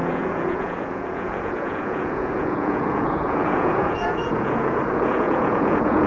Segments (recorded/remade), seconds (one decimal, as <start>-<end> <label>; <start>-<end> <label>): 0.0-6.1 remade